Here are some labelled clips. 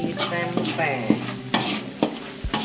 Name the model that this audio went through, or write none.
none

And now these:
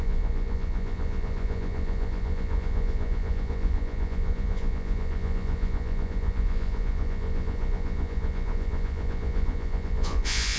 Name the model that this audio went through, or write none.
vocoder, Vocos